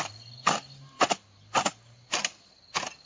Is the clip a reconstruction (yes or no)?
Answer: no